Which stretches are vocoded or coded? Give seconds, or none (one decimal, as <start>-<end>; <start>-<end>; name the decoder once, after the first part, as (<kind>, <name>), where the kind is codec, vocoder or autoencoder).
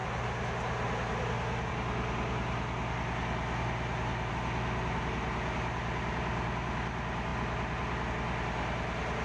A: none